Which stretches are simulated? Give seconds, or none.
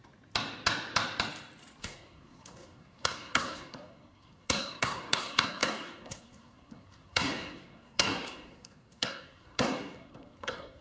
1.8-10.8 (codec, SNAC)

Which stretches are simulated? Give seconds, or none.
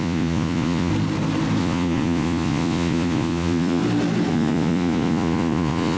0.0-0.9 (vocoder, Vocos); 1.6-3.8; 4.3-6.0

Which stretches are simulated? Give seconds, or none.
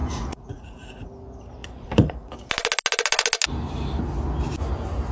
0.0-1.1 (vocoder, Vocos); 1.6-2.3